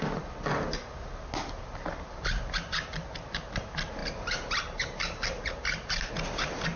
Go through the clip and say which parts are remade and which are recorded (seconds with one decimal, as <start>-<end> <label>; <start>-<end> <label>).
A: 0.0-6.8 recorded